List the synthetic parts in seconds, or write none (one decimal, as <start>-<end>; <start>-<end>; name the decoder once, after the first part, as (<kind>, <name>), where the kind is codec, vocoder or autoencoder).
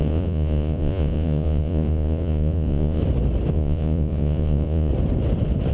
0.0-3.0 (vocoder, Vocos); 3.5-4.9